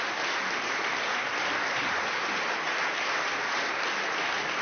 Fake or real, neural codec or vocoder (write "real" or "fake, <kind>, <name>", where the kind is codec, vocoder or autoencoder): real